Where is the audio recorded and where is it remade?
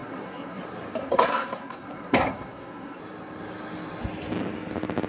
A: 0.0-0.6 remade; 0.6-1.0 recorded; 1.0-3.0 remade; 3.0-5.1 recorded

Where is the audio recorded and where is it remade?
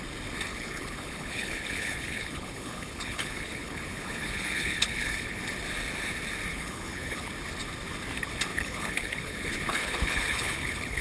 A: 0.0-0.5 recorded; 0.5-5.4 remade; 5.4-6.5 recorded; 6.5-7.3 remade; 7.3-8.5 recorded; 8.5-11.0 remade